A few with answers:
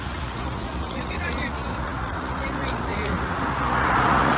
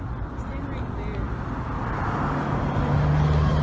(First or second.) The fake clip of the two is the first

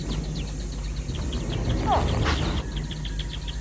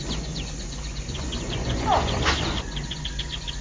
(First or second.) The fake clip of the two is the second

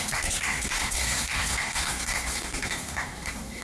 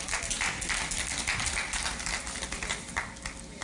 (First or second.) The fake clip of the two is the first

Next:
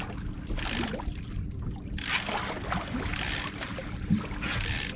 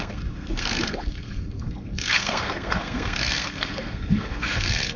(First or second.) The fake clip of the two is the second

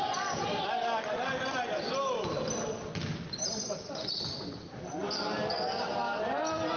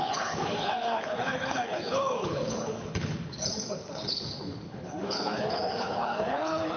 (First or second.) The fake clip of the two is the second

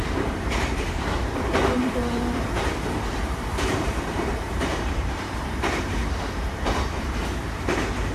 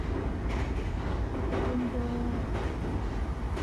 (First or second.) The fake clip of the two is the first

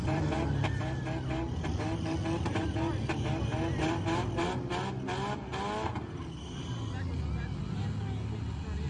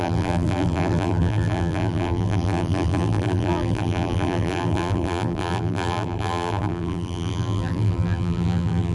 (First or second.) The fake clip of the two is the second